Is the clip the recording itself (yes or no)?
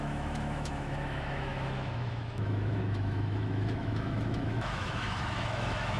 no